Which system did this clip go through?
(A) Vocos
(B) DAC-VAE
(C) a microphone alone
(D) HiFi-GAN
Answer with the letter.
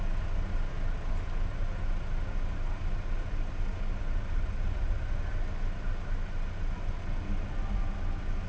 C